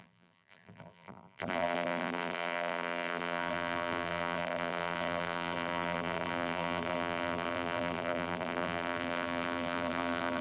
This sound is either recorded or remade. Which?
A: remade